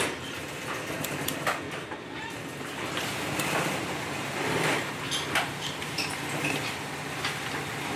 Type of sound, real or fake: real